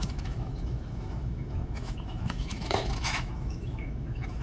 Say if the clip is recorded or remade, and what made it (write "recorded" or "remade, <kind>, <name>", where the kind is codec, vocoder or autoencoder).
remade, autoencoder, DAC-VAE